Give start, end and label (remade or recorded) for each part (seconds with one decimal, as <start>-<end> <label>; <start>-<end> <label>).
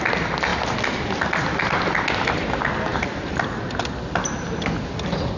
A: 0.0-5.4 recorded